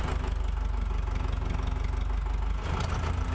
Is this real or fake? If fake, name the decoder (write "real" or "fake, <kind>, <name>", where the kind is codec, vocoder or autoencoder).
real